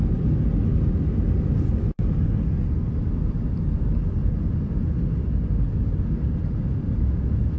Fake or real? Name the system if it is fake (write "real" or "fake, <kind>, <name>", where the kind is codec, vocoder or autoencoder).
real